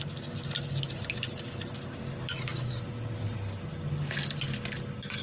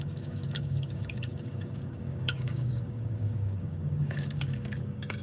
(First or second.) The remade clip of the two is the second